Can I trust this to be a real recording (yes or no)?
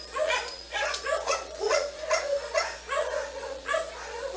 no